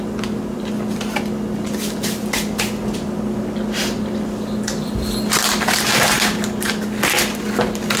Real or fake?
real